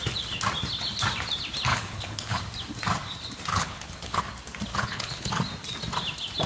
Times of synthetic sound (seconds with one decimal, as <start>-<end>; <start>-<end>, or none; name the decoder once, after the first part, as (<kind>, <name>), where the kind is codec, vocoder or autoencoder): 1.7-2.4 (codec, HILCodec); 3.5-4.2; 4.7-5.3